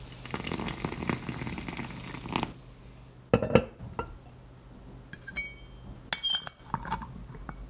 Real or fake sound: real